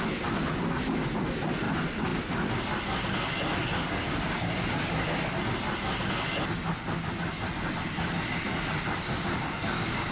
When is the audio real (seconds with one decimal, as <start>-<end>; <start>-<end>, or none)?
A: 0.0-10.1